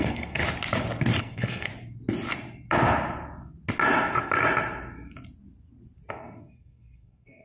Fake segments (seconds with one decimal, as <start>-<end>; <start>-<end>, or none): 0.0-0.4; 1.2-1.7; 6.1-7.4